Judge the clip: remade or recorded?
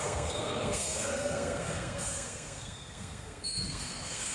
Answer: remade